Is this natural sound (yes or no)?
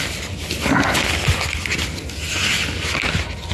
yes